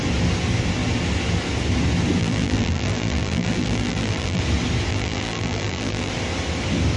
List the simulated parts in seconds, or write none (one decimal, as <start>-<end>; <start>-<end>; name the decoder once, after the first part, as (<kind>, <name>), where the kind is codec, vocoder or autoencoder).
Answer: 2.2-4.4 (vocoder, BigVGAN v2); 4.9-6.1